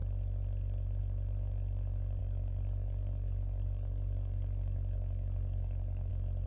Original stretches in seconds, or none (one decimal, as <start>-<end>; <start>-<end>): 0.0-2.2; 6.1-6.5